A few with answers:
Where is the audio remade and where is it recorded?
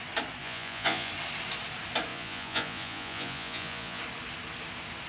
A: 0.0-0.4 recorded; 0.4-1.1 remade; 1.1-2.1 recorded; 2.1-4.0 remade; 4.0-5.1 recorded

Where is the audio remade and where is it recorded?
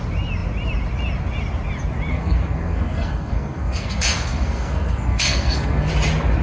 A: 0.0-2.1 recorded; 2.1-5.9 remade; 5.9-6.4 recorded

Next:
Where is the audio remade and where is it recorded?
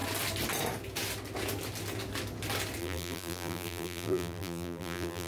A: 0.0-2.8 recorded; 2.8-5.3 remade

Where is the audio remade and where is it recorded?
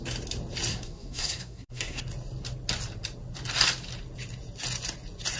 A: 0.0-0.7 recorded; 0.7-2.0 remade; 2.0-5.4 recorded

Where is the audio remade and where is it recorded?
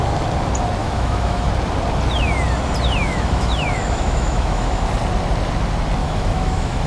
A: 0.0-0.8 recorded; 0.8-1.5 remade; 1.5-3.0 recorded; 3.0-4.7 remade; 4.7-6.0 recorded; 6.0-6.9 remade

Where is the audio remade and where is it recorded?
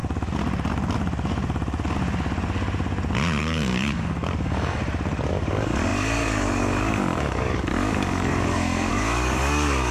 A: 0.0-3.4 recorded; 3.4-4.8 remade; 4.8-5.3 recorded; 5.3-9.9 remade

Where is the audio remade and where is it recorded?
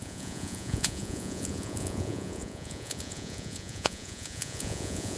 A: 0.0-5.2 remade